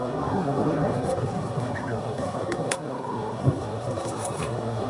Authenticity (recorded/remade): remade